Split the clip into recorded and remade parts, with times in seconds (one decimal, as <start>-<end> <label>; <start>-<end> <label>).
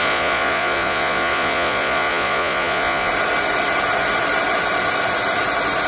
0.0-3.1 remade; 3.1-5.9 recorded